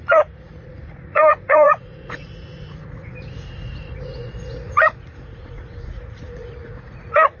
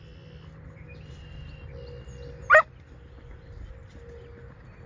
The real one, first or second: second